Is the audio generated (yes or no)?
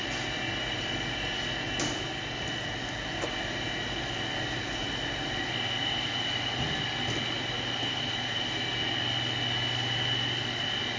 no